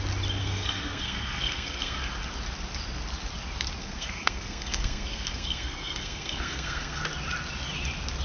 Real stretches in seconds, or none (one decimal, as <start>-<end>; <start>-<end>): 0.0-0.4; 2.0-3.8; 7.0-8.2

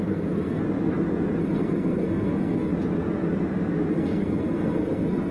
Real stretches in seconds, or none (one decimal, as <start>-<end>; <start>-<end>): 0.6-1.4; 2.7-3.9

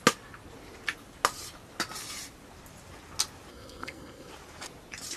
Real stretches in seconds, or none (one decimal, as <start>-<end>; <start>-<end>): 0.0-3.5; 4.3-5.2

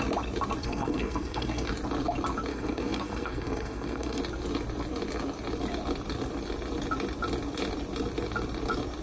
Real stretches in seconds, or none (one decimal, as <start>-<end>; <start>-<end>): 0.0-0.6; 1.7-2.5; 4.2-9.0

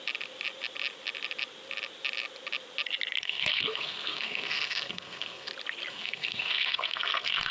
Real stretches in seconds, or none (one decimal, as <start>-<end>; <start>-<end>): 0.0-3.2; 5.5-5.9